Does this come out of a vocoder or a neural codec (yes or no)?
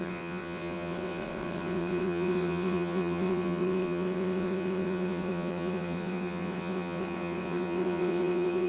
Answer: yes